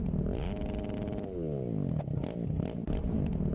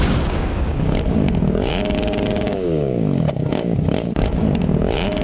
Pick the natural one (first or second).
first